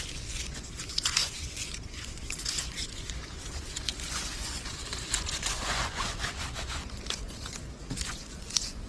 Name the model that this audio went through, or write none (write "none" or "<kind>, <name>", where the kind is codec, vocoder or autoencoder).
vocoder, Vocos